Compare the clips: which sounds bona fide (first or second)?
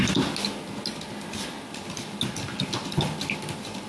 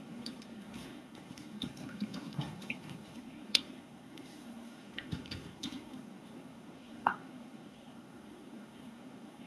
first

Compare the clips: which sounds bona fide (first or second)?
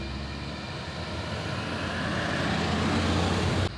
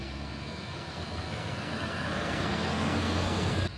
first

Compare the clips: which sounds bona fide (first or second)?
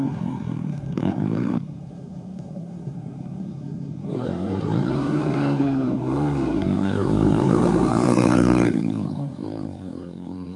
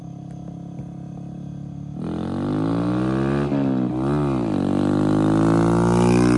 second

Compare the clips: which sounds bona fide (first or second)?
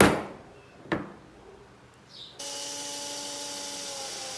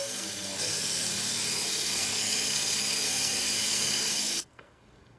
first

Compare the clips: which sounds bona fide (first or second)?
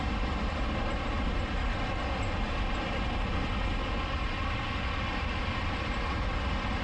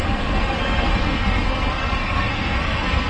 first